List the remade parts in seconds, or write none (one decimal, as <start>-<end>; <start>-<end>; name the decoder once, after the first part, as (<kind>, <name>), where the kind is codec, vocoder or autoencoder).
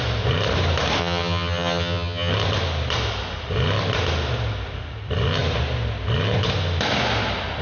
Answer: 1.0-2.3 (vocoder, HiFi-GAN)